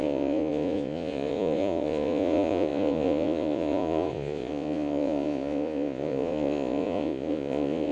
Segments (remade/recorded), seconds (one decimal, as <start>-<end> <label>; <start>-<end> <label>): 0.0-7.9 remade